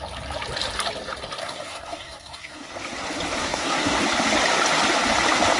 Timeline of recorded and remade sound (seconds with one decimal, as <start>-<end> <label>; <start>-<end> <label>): 0.0-1.4 recorded; 1.4-2.7 remade; 2.7-3.4 recorded; 3.4-4.0 remade; 4.0-5.6 recorded